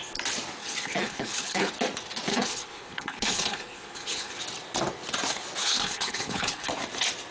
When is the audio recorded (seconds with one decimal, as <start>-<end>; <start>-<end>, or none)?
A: 0.0-0.6; 1.7-2.3; 4.4-5.6; 6.7-7.3